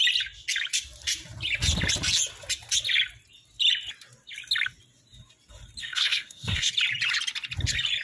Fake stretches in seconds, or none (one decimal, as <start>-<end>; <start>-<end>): 5.8-6.7

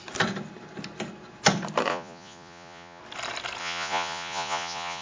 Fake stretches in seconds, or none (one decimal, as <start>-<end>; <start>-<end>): 1.9-3.0; 3.6-5.0

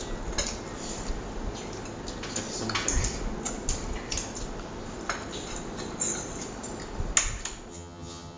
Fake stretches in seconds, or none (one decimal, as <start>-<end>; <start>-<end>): 7.7-8.4

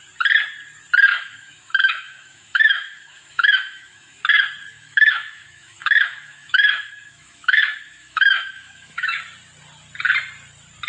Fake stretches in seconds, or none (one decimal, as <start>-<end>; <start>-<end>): 1.1-4.2; 4.7-9.2

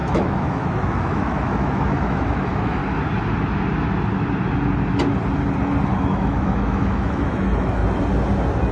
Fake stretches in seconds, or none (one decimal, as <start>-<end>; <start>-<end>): 0.0-2.8; 6.0-7.8

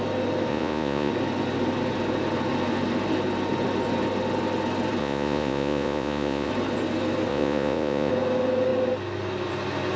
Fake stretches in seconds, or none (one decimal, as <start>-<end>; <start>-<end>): 0.5-1.1; 5.0-6.5; 7.3-8.1